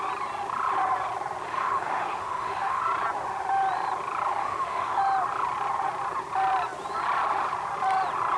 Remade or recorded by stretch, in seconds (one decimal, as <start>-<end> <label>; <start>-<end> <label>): 0.0-1.5 recorded; 1.5-2.8 remade; 2.8-4.4 recorded; 4.4-5.0 remade; 5.0-8.4 recorded